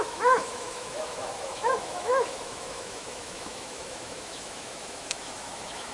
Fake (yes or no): yes